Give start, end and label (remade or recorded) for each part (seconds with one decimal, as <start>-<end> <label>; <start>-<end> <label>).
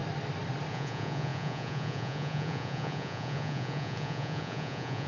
0.0-0.7 recorded; 0.7-5.1 remade